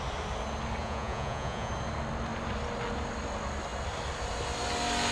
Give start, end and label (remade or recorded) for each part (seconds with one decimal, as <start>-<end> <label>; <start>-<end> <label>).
0.0-0.8 recorded; 0.8-1.7 remade; 1.7-5.1 recorded